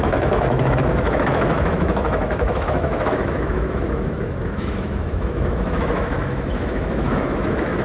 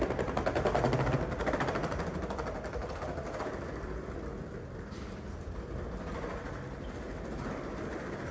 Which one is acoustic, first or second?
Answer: second